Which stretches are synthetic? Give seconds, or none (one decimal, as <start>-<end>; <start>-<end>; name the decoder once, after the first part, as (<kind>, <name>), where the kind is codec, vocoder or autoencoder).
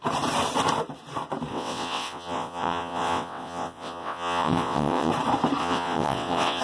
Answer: 1.5-5.1 (vocoder, WaveNeXt); 5.6-6.6